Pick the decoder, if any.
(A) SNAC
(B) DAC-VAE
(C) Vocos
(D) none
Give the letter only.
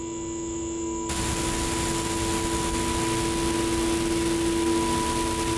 D